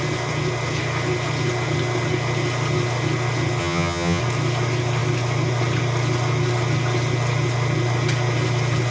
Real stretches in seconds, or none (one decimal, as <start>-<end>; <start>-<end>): 0.0-3.6; 4.2-8.9